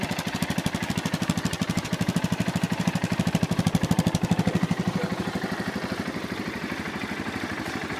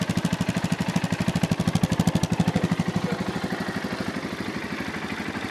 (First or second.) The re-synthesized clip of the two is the first